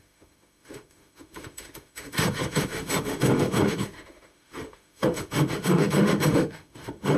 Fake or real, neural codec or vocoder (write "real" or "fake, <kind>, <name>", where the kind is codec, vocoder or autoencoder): fake, autoencoder, DAC-VAE